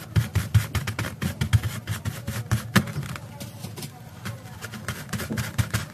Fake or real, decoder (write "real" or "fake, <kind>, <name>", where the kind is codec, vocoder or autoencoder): real